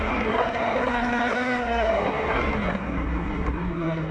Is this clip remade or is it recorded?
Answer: remade